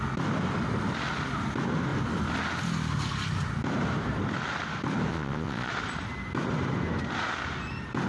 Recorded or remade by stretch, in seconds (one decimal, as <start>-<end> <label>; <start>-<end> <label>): 0.0-5.1 recorded; 5.1-5.7 remade; 5.7-8.1 recorded